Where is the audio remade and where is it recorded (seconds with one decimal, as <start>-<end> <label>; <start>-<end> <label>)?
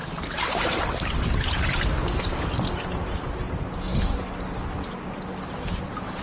0.0-6.2 recorded